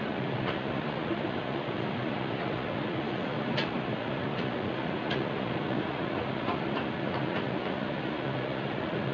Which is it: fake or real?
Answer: fake